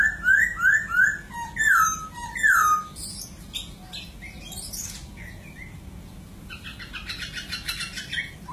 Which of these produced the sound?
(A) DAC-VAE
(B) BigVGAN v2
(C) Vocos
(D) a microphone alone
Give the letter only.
D